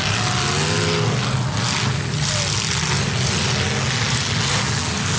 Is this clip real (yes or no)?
yes